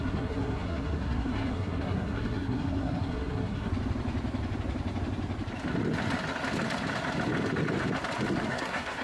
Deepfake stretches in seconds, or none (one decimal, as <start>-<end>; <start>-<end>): 0.0-3.7; 8.5-9.0